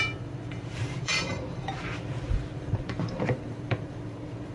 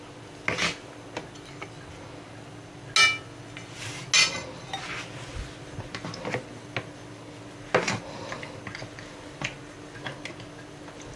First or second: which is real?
second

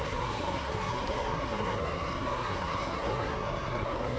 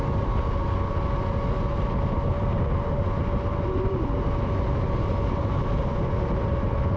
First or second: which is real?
second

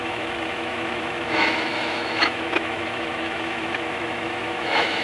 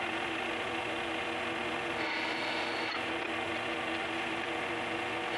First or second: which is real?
second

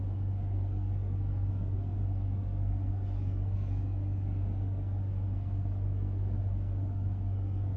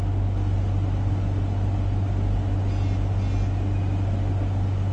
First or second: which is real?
second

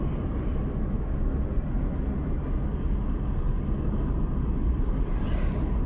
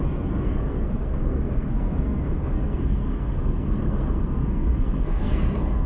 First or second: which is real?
first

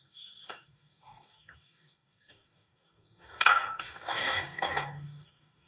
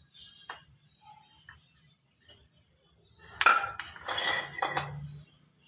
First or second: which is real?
second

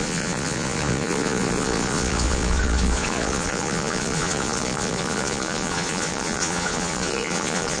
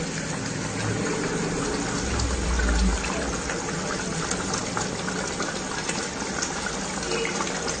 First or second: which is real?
second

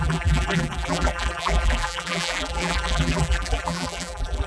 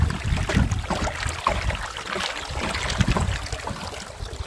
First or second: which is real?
second